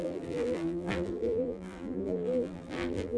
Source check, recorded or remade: remade